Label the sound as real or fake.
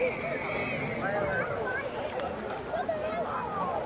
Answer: real